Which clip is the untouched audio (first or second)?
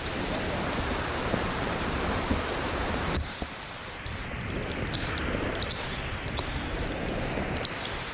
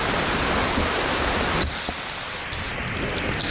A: second